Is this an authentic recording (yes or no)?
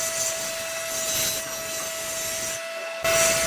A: yes